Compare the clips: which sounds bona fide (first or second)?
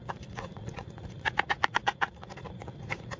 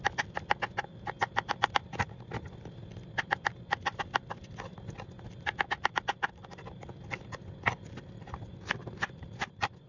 second